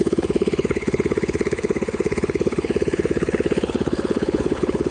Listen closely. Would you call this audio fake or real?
fake